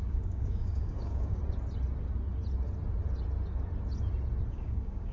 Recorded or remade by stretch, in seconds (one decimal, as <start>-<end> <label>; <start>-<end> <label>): 0.0-1.4 remade; 1.4-4.5 recorded; 4.5-5.1 remade